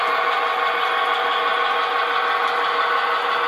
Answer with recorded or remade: recorded